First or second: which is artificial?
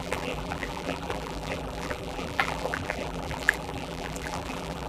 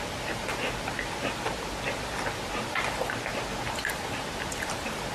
first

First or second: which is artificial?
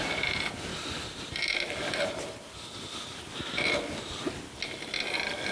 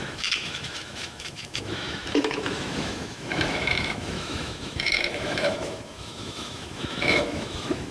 second